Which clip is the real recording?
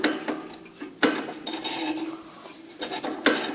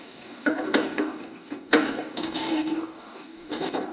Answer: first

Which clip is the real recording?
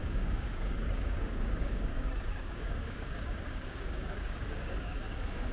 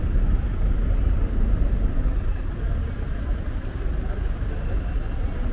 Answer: second